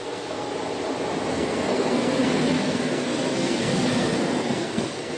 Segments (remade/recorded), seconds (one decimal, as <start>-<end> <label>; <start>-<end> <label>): 0.0-0.5 remade; 0.5-1.3 recorded; 1.3-5.2 remade